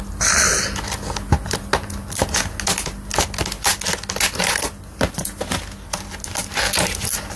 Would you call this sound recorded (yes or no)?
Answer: yes